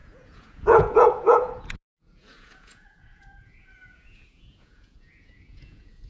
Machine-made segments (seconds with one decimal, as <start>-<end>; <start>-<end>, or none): 0.0-6.1